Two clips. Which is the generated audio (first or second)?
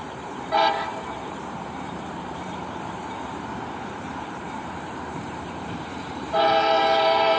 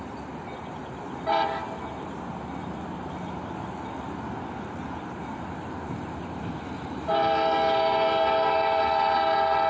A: first